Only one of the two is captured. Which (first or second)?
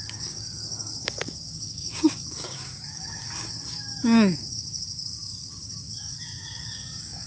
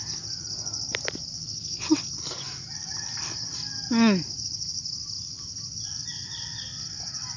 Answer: second